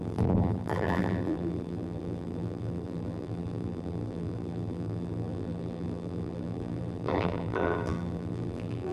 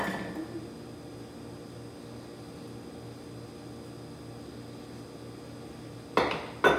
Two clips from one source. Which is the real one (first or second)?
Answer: second